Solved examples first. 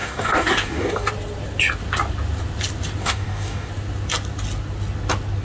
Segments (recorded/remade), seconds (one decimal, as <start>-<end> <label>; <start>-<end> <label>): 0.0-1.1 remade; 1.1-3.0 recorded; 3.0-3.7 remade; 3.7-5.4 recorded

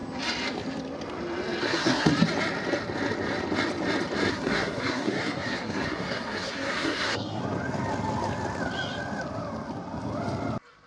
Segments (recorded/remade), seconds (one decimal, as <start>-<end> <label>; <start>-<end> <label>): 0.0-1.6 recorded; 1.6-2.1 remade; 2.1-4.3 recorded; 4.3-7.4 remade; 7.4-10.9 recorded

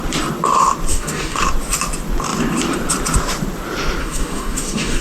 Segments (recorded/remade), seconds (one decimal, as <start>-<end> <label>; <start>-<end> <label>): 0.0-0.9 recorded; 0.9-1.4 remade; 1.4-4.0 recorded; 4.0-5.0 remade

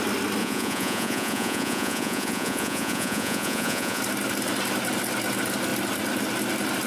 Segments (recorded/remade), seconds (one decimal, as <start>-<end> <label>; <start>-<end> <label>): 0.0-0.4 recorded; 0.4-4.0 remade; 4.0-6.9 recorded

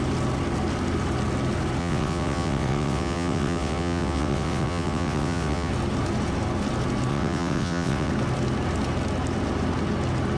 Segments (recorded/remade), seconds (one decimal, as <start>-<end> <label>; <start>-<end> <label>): 0.0-1.8 recorded; 1.8-5.7 remade; 5.7-7.1 recorded; 7.1-8.1 remade; 8.1-10.4 recorded

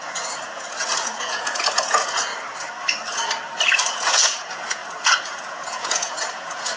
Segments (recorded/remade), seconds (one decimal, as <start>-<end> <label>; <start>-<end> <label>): 0.0-2.3 remade; 2.3-3.9 recorded; 3.9-6.8 remade

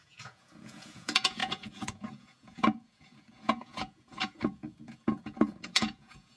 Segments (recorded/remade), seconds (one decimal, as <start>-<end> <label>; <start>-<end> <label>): 0.0-6.4 remade